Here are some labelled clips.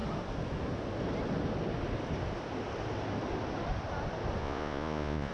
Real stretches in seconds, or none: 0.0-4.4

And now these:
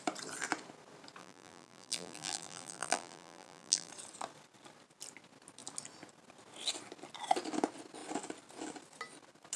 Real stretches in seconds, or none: 0.0-1.2; 3.9-9.6

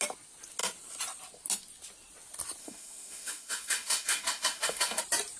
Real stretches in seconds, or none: 0.0-2.6; 5.0-5.4

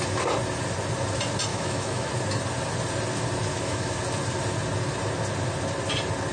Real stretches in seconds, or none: 0.0-1.5; 2.1-3.5; 4.0-6.3

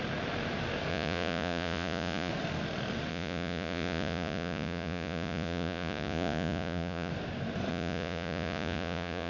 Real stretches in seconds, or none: 0.0-0.9; 2.3-3.1; 7.1-7.7

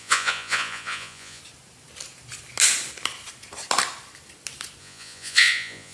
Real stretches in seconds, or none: 1.4-4.8

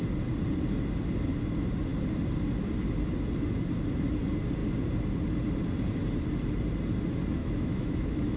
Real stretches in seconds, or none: 0.0-7.4

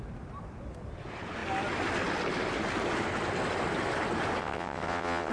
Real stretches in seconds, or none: 0.0-4.4